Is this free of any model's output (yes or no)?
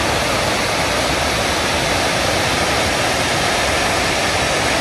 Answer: yes